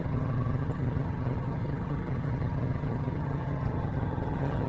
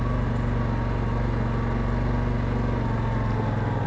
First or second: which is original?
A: second